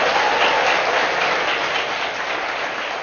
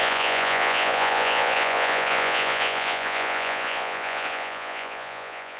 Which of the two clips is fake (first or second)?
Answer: second